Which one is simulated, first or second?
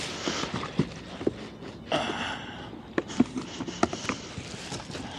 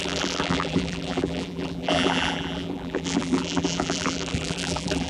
second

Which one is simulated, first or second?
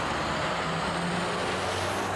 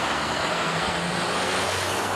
second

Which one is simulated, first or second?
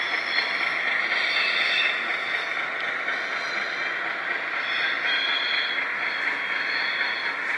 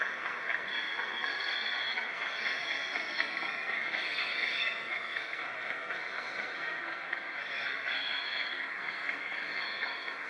second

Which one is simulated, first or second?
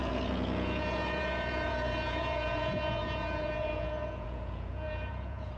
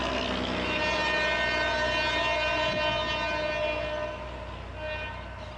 first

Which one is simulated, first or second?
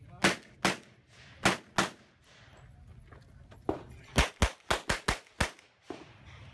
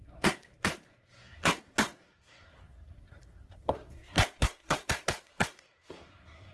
second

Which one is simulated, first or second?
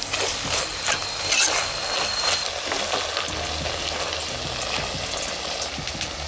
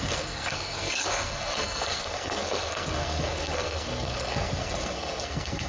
second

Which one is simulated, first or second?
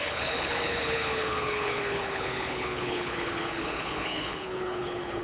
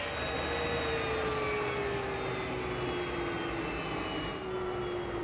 first